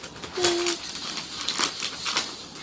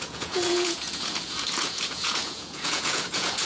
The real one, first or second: first